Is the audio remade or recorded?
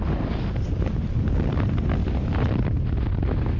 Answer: recorded